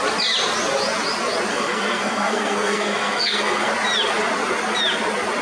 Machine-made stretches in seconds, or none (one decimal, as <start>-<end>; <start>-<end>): 1.5-3.7